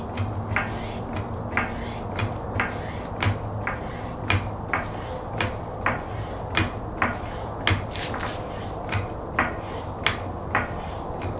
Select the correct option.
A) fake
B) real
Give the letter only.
B